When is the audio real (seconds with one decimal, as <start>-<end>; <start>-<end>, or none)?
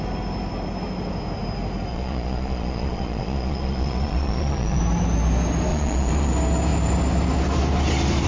0.0-1.9; 4.8-5.7; 6.3-8.3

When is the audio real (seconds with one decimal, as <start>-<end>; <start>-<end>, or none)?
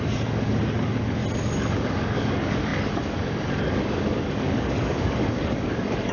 1.2-1.7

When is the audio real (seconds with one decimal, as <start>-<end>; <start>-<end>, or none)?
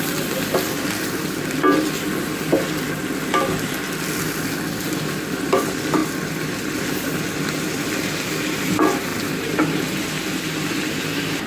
0.0-11.5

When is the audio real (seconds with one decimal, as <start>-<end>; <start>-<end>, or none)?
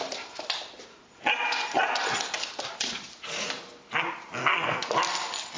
0.0-4.4; 4.9-5.6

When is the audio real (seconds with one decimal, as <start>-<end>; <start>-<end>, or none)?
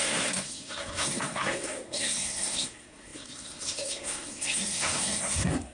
none